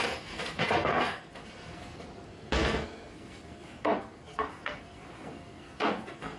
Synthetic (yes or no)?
yes